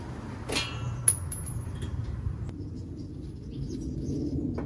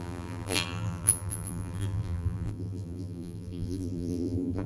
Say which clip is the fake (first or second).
second